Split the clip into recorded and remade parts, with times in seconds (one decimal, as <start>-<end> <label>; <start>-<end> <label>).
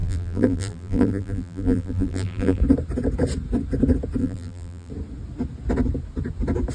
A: 0.0-2.6 remade; 2.6-4.2 recorded; 4.2-4.9 remade; 4.9-6.7 recorded